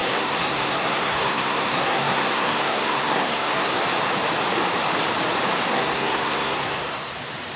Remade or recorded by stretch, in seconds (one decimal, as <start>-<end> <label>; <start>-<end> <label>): 0.0-3.8 remade; 3.8-5.7 recorded; 5.7-7.1 remade; 7.1-7.6 recorded